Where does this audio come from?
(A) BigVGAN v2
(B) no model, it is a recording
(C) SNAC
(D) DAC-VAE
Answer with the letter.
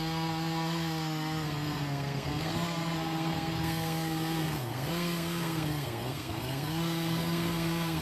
C